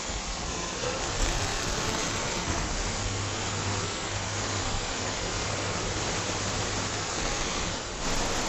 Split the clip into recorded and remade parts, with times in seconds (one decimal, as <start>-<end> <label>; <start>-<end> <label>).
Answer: 0.0-5.8 remade; 5.8-6.9 recorded; 6.9-7.9 remade; 7.9-8.5 recorded